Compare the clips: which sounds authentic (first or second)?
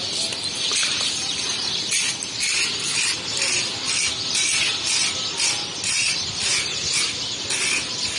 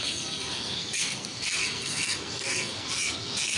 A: first